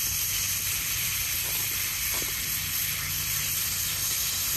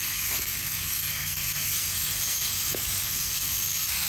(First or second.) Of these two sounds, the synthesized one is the second